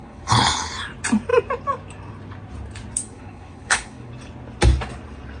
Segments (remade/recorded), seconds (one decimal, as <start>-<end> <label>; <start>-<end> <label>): 0.0-0.7 remade; 0.7-3.0 recorded; 3.0-4.1 remade; 4.1-5.4 recorded